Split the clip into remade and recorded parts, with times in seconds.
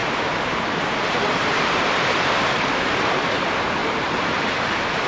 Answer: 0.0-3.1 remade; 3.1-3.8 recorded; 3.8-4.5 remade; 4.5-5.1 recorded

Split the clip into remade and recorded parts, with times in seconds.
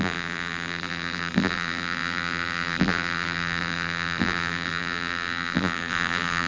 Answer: 0.0-6.5 remade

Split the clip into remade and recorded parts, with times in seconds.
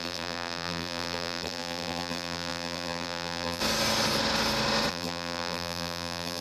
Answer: 0.0-3.6 remade; 3.6-4.9 recorded; 4.9-6.4 remade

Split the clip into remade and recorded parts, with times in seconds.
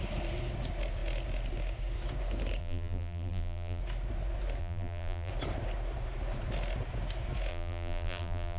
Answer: 0.0-2.6 recorded; 2.6-3.8 remade; 3.8-4.6 recorded; 4.6-5.3 remade; 5.3-7.5 recorded; 7.5-8.6 remade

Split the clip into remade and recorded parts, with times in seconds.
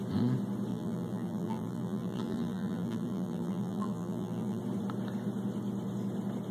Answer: 0.0-0.7 recorded; 0.7-4.6 remade; 4.6-6.5 recorded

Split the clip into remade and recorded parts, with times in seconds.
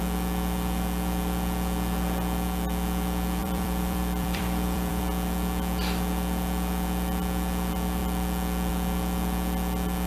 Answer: 0.0-3.4 recorded; 3.4-5.0 remade; 5.0-10.1 recorded